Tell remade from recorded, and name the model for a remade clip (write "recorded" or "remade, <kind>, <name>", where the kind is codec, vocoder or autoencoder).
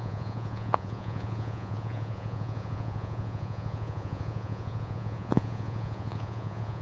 remade, vocoder, Vocos